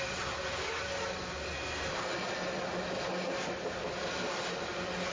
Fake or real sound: real